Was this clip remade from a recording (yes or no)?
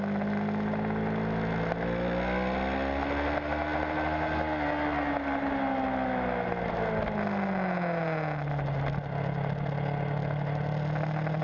no